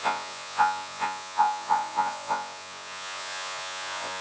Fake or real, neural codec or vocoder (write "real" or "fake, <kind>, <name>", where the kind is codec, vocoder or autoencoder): fake, vocoder, Vocos